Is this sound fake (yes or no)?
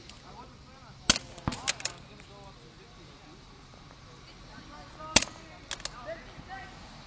no